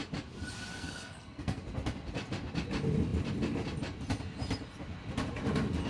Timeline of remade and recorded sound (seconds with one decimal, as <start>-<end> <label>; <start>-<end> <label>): 0.0-0.7 recorded; 0.7-1.6 remade; 1.6-5.9 recorded